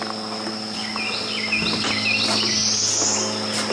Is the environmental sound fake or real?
real